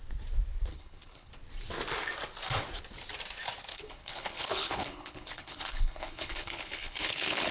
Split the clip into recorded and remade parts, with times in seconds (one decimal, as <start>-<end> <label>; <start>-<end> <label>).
0.0-0.7 recorded; 0.7-1.3 remade; 1.3-3.7 recorded; 3.7-7.5 remade